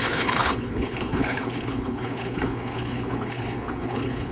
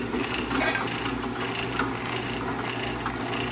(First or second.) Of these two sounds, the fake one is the first